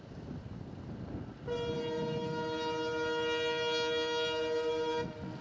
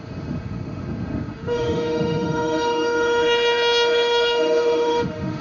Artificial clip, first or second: second